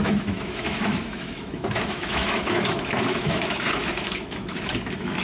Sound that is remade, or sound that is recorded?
remade